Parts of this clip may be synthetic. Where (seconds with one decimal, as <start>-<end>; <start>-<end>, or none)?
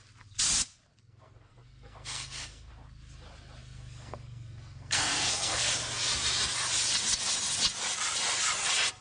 0.9-2.7; 3.6-5.7